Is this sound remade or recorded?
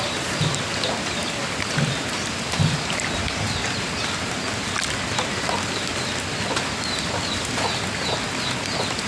recorded